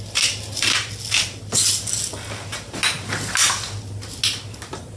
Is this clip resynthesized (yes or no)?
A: no